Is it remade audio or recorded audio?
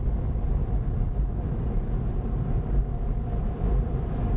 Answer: recorded